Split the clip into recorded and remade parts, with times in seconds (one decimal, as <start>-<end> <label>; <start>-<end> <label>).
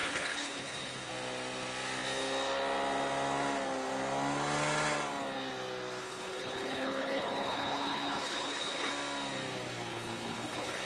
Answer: 0.0-1.1 remade; 1.1-6.0 recorded; 6.0-8.9 remade; 8.9-9.9 recorded; 9.9-10.8 remade